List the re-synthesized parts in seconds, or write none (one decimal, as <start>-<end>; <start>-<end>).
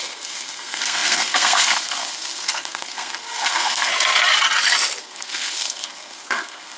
0.0-3.9; 5.0-6.8